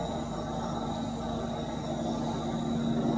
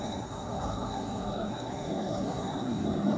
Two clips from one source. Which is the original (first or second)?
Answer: first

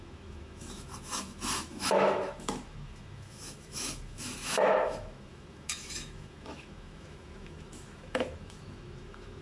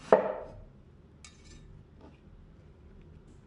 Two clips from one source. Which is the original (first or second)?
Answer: second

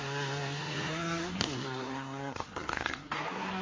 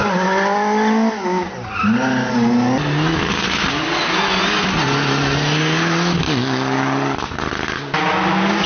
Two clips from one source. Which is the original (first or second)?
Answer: second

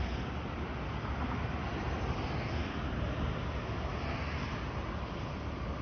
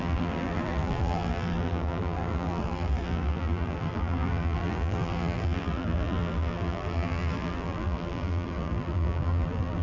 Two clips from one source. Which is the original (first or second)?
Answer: first